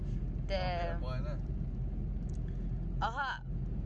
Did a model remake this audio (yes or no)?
no